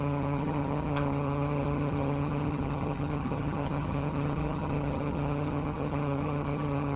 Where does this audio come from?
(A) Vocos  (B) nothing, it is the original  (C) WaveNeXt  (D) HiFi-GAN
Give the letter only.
D